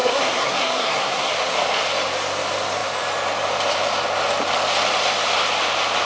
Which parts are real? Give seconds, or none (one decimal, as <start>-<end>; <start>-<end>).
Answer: 1.3-6.0